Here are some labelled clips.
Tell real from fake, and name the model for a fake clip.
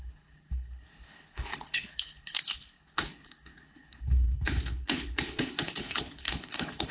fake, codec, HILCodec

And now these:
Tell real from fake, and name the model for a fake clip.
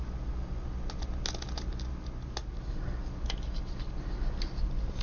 real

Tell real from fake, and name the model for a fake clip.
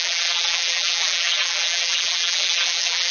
fake, vocoder, BigVGAN v2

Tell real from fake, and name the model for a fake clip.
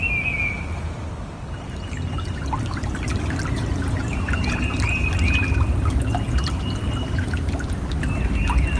real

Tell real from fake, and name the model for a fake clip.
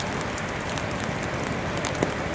real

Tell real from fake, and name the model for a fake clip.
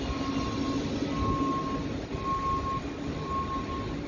real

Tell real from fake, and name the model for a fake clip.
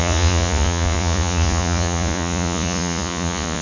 fake, vocoder, Vocos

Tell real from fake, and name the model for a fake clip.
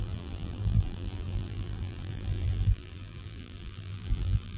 fake, vocoder, BigVGAN v2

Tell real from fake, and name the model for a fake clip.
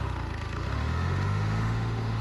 fake, autoencoder, DAC-VAE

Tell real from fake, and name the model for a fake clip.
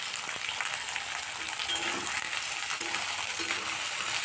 real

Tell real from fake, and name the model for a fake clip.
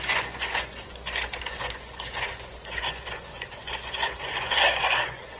fake, vocoder, Vocos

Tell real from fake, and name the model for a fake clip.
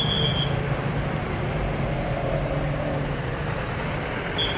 real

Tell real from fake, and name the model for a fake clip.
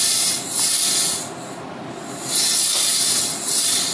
real